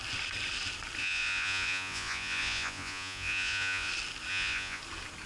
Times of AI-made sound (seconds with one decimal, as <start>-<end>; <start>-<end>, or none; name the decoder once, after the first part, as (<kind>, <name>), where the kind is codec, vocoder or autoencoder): 1.0-3.9 (vocoder, Vocos); 4.3-4.8